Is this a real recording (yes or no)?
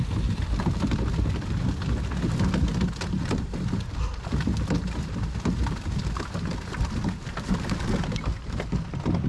yes